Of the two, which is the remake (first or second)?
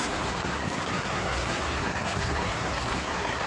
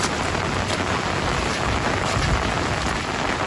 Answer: first